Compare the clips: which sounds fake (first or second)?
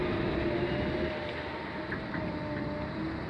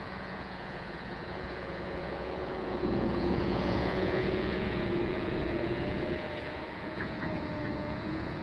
second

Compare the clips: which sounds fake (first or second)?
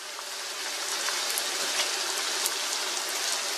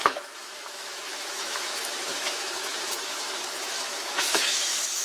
second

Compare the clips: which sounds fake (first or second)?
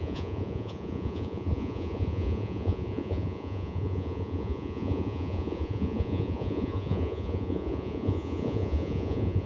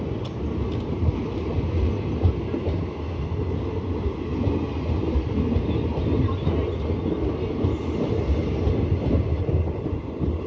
first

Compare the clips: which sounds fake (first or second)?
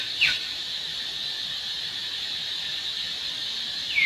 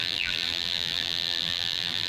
second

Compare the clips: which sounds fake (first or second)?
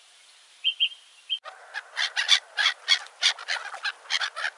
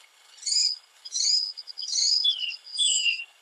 second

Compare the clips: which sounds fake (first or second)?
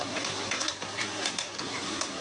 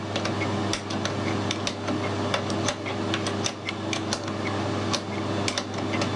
first